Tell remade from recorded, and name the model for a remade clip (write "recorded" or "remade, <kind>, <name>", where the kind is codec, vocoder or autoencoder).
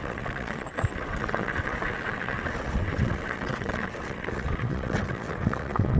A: remade, vocoder, WaveNeXt